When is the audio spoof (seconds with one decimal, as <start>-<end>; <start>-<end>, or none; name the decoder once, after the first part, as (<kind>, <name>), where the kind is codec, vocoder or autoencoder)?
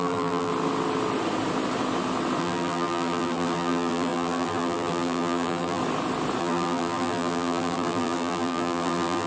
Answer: 0.0-0.5 (vocoder, BigVGAN v2); 2.4-5.8; 6.4-9.3